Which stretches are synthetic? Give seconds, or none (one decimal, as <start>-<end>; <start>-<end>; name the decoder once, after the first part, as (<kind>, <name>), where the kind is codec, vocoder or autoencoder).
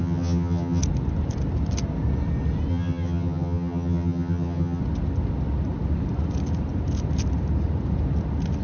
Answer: 0.0-0.8 (vocoder, HiFi-GAN); 2.7-4.8